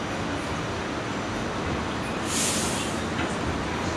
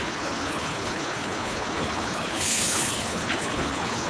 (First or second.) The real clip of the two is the first